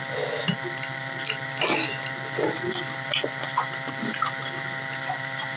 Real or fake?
real